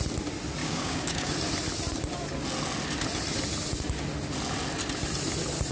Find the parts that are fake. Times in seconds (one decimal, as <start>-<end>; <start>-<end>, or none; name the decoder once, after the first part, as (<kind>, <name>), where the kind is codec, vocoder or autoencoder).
0.6-1.3 (codec, DAC)